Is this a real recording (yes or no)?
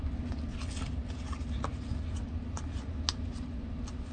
yes